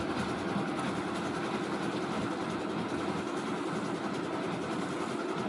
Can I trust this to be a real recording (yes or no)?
yes